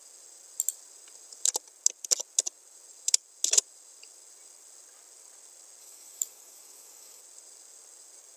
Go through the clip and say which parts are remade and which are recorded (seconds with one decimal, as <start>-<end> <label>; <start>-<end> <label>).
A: 0.0-5.8 recorded; 5.8-7.2 remade; 7.2-8.4 recorded